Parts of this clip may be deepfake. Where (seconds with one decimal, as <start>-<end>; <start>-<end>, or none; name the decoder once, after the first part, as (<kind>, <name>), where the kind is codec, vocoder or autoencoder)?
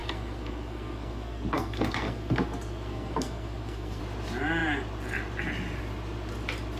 0.0-4.0 (codec, SNAC)